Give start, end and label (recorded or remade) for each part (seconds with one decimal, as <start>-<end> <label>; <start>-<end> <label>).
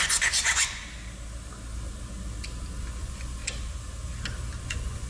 0.0-0.8 remade; 0.8-3.0 recorded; 3.0-3.4 remade; 3.4-4.6 recorded; 4.6-5.1 remade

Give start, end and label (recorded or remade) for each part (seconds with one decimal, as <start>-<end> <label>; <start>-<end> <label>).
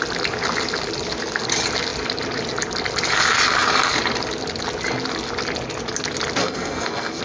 0.0-6.4 recorded; 6.4-7.2 remade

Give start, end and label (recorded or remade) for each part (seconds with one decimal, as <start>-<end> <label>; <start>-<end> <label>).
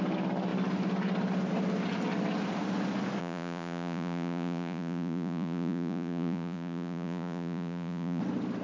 0.0-3.2 recorded; 3.2-8.2 remade; 8.2-8.6 recorded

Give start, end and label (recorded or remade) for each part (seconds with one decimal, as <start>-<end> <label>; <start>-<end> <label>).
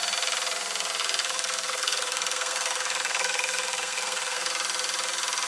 0.0-1.2 recorded; 1.2-4.5 remade; 4.5-5.5 recorded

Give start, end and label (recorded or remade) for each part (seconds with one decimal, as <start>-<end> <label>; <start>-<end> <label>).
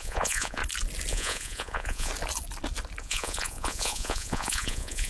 0.0-0.6 remade; 0.6-1.1 recorded; 1.1-2.1 remade; 2.1-3.0 recorded; 3.0-5.1 remade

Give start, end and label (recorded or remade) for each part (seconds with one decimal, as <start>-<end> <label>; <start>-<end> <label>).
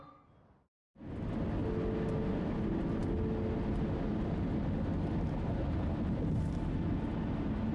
0.0-7.7 recorded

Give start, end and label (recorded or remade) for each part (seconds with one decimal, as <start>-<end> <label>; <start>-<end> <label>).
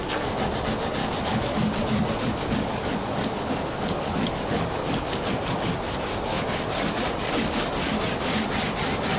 0.0-1.0 recorded; 1.0-5.3 remade; 5.3-6.3 recorded; 6.3-7.7 remade; 7.7-9.2 recorded